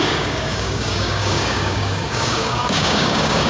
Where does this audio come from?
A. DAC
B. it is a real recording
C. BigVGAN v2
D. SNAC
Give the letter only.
A